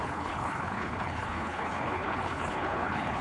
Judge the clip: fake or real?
fake